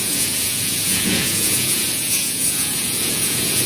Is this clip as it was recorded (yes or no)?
no